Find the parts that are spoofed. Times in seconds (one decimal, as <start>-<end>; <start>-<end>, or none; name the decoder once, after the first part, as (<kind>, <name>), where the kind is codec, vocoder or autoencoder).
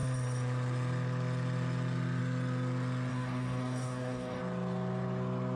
3.1-4.4 (codec, DAC)